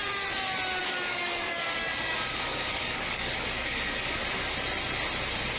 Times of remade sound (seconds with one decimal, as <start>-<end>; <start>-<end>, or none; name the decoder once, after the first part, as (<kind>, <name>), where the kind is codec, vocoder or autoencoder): 0.8-4.2 (codec, DAC)